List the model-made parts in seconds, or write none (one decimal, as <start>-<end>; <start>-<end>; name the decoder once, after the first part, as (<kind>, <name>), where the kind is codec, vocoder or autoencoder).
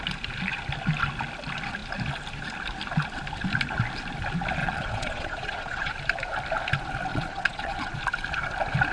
4.6-5.9 (vocoder, Vocos); 7.1-8.0